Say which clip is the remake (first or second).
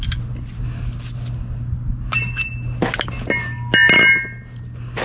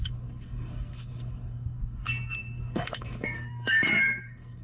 second